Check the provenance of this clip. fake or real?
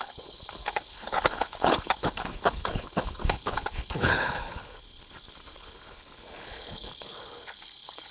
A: fake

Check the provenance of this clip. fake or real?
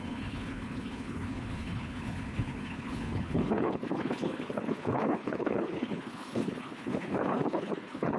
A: fake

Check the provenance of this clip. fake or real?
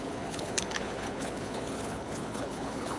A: fake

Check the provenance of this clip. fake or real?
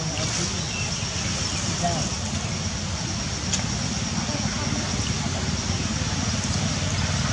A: real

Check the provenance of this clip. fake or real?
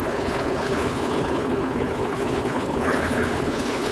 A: fake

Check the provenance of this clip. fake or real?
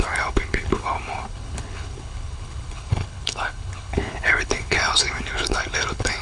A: fake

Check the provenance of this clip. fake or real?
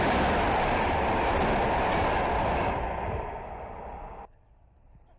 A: real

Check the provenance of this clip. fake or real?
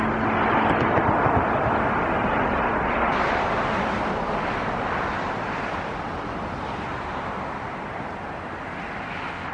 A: real